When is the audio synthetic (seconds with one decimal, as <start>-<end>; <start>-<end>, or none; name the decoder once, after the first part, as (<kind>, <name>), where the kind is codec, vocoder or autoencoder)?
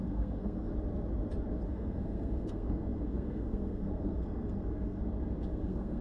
0.0-0.7 (codec, SNAC); 1.7-5.0; 5.5-6.0